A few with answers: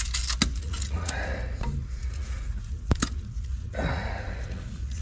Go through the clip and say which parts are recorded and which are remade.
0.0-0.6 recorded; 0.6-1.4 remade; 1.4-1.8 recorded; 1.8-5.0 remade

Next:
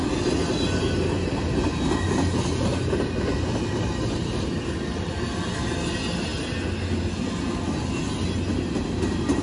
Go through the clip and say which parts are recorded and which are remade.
0.0-9.4 recorded

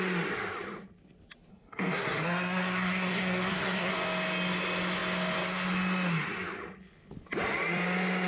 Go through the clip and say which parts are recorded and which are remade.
0.0-1.5 recorded; 1.5-3.9 remade; 3.9-8.3 recorded

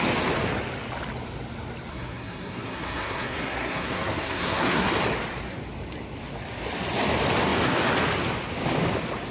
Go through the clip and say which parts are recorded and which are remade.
0.0-1.9 recorded; 1.9-4.9 remade; 4.9-9.3 recorded

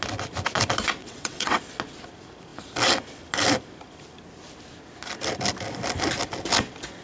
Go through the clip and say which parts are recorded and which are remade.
0.0-1.0 recorded; 1.0-1.6 remade; 1.6-7.0 recorded